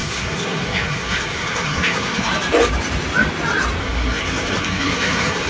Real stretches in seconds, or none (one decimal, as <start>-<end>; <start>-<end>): 2.3-3.8